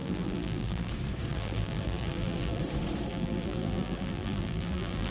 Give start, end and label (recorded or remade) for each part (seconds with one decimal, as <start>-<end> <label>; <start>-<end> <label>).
0.0-0.9 remade; 0.9-1.3 recorded; 1.3-2.6 remade; 2.6-3.1 recorded; 3.1-5.1 remade